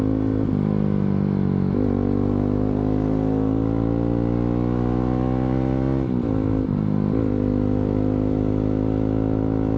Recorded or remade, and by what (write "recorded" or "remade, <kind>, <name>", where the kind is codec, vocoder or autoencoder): recorded